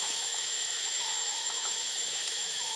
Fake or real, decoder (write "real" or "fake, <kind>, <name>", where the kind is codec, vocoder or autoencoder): fake, autoencoder, DAC-VAE